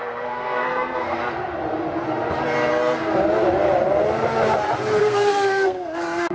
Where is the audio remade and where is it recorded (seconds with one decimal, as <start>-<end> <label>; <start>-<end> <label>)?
0.0-1.2 remade; 1.2-5.0 recorded; 5.0-6.3 remade